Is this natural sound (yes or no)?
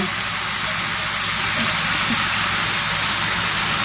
yes